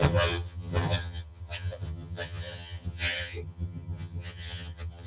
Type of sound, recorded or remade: remade